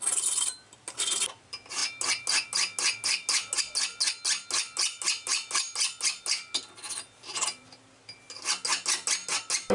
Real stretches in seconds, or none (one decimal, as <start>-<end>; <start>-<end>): 0.0-9.7